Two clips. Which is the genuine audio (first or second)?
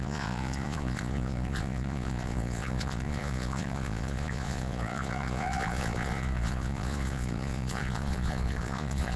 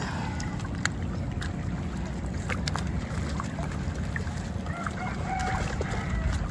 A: second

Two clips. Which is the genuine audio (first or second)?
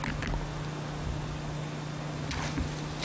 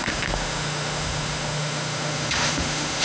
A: first